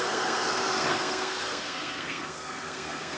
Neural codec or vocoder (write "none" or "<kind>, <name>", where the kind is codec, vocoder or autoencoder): codec, SNAC